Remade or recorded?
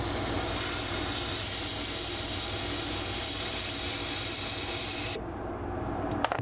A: recorded